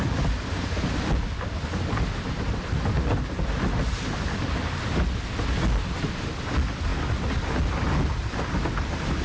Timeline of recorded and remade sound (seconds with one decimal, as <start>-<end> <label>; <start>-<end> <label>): 0.0-9.2 recorded